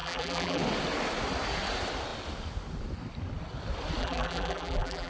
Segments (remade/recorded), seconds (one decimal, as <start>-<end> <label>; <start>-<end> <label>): 0.0-0.6 remade; 0.6-4.0 recorded; 4.0-5.1 remade